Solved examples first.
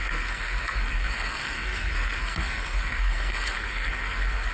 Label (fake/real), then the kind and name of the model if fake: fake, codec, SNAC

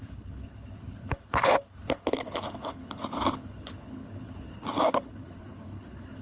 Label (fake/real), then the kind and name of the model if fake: fake, codec, HILCodec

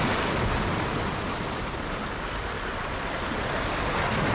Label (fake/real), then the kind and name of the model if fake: real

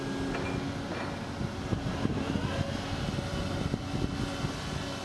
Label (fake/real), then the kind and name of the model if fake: real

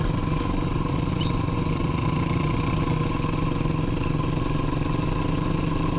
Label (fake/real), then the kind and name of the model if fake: real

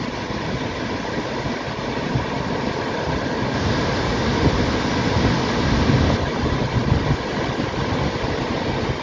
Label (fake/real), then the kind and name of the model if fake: real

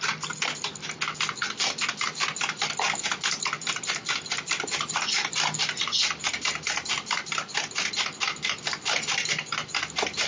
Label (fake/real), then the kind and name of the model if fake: real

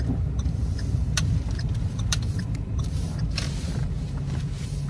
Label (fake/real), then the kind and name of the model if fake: fake, vocoder, BigVGAN v2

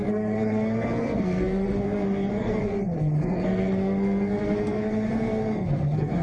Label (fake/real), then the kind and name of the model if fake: fake, codec, SNAC